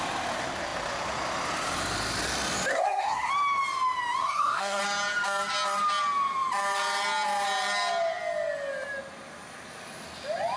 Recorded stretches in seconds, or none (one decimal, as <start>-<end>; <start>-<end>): 0.0-2.7; 3.3-4.2; 4.8-10.6